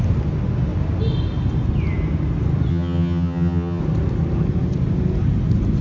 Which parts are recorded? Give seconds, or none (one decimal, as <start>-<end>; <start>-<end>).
0.0-2.7; 3.8-5.8